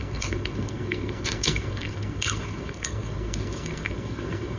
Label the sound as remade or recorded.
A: remade